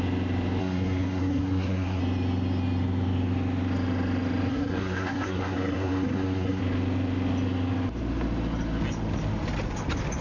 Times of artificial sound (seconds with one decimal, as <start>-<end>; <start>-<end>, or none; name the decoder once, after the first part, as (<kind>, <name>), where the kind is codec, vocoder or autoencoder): 0.6-2.0 (codec, SNAC); 4.5-6.6